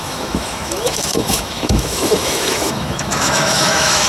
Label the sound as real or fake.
fake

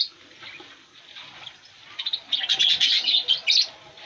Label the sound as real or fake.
real